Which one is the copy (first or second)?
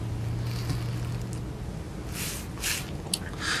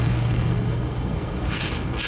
second